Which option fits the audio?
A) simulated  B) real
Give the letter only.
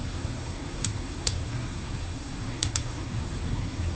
A